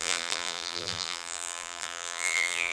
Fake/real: fake